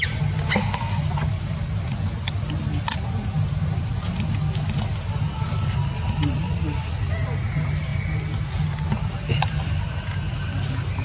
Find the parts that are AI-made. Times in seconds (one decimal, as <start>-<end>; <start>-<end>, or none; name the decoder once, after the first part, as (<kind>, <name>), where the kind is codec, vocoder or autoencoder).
none